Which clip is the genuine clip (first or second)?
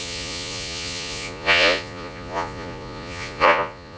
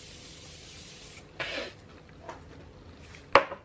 second